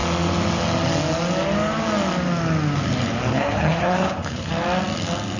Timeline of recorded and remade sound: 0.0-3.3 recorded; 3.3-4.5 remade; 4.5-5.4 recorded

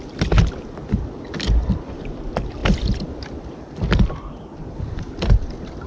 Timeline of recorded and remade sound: 0.0-5.9 recorded

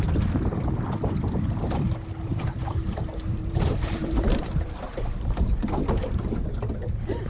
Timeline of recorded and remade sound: 0.0-2.3 recorded; 2.3-6.2 remade; 6.2-7.3 recorded

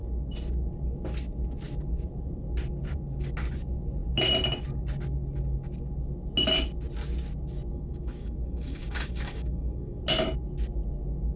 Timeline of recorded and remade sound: 0.0-7.7 recorded; 7.7-10.0 remade; 10.0-11.4 recorded

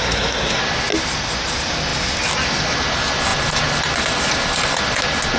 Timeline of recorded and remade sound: 0.0-0.6 remade; 0.6-5.4 recorded